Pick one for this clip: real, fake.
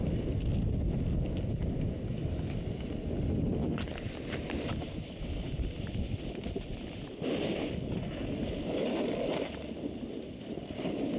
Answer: real